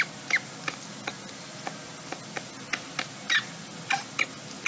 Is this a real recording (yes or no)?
yes